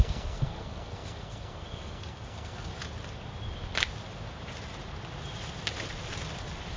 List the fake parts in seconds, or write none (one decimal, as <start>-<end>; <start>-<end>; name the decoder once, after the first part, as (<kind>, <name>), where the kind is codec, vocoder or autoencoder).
0.0-2.7 (codec, SNAC)

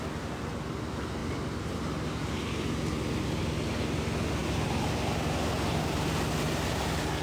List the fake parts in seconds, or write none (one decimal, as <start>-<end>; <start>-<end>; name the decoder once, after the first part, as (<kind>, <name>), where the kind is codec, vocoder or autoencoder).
none

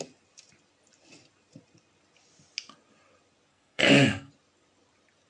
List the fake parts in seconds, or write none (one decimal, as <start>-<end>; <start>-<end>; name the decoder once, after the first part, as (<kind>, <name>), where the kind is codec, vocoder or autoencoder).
3.5-4.3 (codec, SNAC)

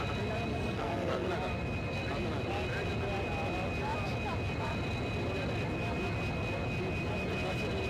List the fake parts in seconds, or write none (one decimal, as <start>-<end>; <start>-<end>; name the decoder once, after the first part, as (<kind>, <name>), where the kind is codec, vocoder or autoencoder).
0.5-1.3 (codec, SNAC)

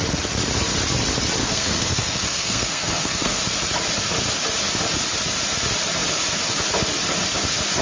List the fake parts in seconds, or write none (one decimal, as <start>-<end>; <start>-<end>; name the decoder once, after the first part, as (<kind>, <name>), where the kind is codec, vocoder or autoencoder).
1.4-3.4 (codec, SNAC)